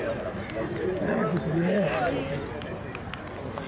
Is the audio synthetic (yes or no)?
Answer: no